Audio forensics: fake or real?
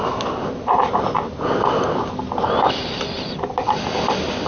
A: real